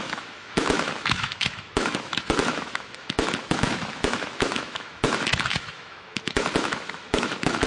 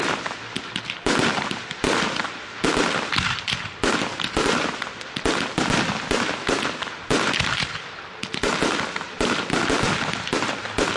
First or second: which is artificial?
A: first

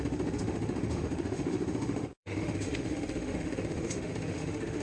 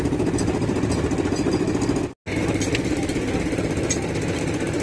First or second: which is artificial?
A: first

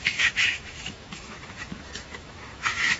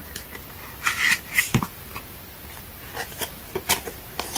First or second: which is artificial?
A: first